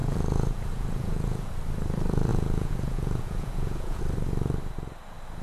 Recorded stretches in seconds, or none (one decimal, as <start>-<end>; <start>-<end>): 1.5-2.3; 4.0-5.4